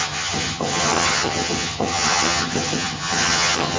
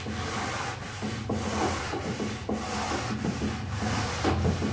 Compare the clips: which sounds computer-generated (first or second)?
first